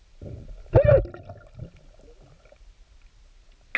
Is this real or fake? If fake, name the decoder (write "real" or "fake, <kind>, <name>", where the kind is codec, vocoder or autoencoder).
real